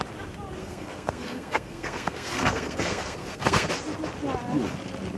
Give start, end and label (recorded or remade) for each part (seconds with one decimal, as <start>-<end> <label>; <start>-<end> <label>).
0.0-0.6 recorded; 0.6-3.7 remade; 3.7-5.2 recorded